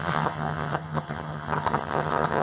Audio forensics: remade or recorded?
remade